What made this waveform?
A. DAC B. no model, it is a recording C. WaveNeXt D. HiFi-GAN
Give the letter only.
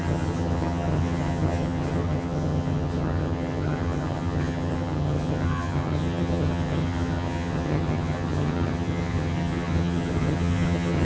D